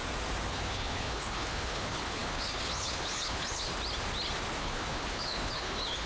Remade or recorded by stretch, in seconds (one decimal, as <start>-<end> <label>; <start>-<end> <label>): 0.0-0.5 recorded; 0.5-3.7 remade; 3.7-4.6 recorded; 4.6-6.1 remade